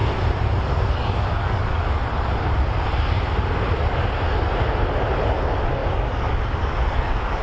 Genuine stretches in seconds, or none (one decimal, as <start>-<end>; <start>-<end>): 0.0-0.9; 2.0-5.2